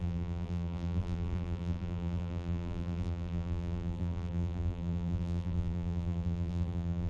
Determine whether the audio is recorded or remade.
remade